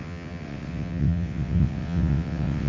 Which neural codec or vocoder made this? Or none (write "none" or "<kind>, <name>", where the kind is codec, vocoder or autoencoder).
vocoder, WaveNeXt